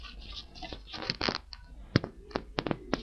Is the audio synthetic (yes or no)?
no